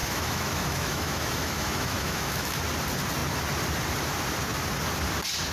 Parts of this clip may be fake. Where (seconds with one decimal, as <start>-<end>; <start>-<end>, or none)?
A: 0.0-2.6